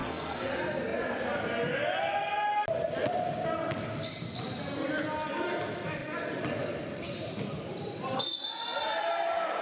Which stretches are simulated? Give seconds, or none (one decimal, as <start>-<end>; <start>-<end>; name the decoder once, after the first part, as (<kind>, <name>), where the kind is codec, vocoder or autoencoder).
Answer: 0.0-0.5 (codec, SNAC)

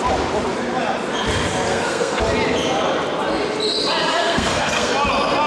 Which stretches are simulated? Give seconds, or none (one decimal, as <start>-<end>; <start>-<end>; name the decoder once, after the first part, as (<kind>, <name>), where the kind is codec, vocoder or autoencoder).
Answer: 1.7-2.2 (codec, SNAC); 4.1-4.9

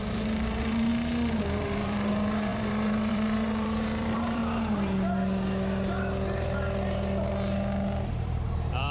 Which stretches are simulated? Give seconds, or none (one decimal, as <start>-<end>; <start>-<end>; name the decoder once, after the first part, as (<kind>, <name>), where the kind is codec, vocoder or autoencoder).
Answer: 0.0-0.9 (vocoder, BigVGAN v2); 1.4-4.4; 8.1-8.9

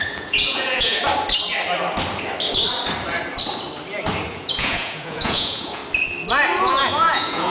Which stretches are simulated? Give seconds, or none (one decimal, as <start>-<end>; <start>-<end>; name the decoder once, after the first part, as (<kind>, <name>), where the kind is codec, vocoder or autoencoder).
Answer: 0.0-1.0 (vocoder, Vocos); 4.3-5.8; 6.6-7.5

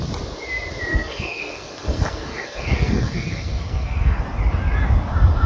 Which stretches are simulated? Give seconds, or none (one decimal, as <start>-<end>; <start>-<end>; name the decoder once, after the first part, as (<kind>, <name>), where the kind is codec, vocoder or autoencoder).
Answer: 0.9-4.2 (codec, SNAC)

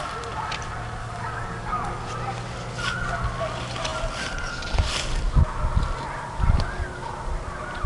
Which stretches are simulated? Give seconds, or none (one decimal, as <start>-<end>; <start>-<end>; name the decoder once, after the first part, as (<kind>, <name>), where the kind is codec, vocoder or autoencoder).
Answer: 1.0-2.1 (codec, DAC)

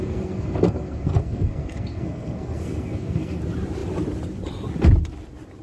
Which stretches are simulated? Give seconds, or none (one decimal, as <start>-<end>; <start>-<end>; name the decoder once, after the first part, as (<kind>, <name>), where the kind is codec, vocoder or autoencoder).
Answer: 0.0-3.4 (codec, SNAC)

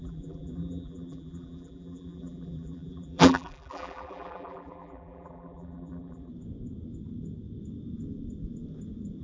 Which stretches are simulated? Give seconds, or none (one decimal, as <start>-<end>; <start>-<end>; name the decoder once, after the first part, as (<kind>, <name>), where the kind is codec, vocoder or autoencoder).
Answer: 0.0-6.3 (vocoder, BigVGAN v2)